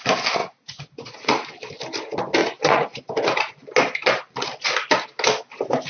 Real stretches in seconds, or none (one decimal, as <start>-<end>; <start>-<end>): 0.0-0.4; 1.5-2.4; 3.0-5.9